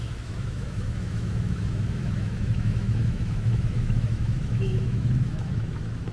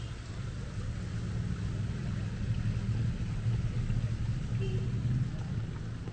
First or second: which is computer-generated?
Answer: first